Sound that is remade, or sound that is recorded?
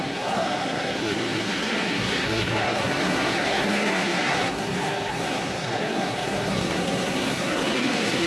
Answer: remade